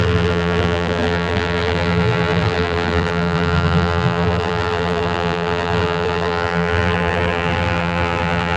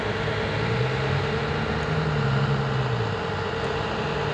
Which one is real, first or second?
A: second